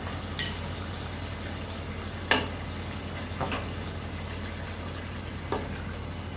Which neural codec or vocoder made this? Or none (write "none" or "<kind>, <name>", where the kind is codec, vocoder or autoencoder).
none